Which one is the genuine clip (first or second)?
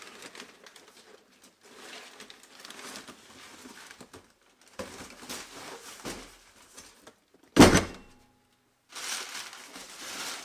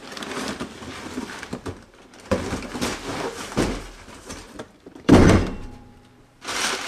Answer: first